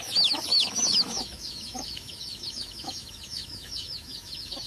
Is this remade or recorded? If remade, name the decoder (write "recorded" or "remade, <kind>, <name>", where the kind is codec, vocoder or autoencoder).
remade, autoencoder, DAC-VAE